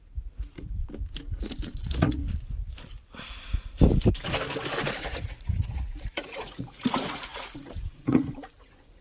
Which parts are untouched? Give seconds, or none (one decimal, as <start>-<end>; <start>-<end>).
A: 0.8-1.3; 2.2-5.0